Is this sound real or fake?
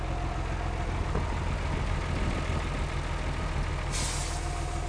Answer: real